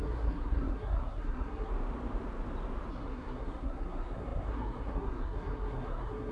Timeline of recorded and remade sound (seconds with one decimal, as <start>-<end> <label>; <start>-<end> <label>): 0.0-1.7 remade; 1.7-2.9 recorded; 2.9-6.3 remade